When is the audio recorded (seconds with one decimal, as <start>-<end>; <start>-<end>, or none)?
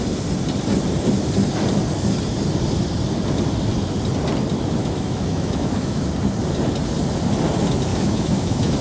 0.0-4.8; 6.1-7.9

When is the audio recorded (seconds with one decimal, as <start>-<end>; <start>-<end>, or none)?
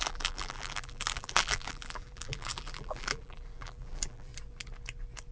4.3-5.3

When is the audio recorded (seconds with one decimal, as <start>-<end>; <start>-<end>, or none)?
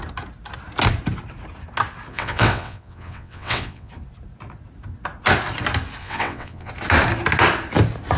0.0-2.1; 3.9-6.0; 6.7-8.2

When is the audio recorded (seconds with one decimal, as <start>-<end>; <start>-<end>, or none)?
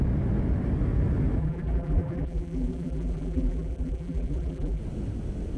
0.0-1.4; 4.8-5.6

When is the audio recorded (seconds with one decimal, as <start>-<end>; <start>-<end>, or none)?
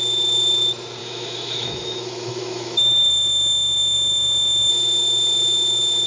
0.0-1.0; 4.7-6.1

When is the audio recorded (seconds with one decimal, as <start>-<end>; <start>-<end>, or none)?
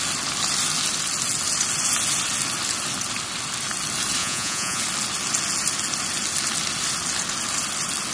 0.0-4.2; 4.8-8.1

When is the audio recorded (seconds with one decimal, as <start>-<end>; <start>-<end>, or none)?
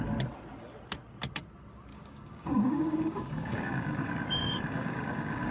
0.0-1.9